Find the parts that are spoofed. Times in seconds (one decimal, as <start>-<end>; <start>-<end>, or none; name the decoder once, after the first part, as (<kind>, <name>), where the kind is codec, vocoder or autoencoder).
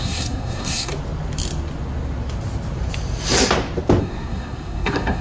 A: 0.0-0.9 (codec, SNAC); 4.0-5.2